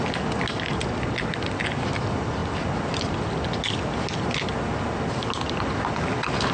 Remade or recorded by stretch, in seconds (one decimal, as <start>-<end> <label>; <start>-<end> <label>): 0.0-6.5 recorded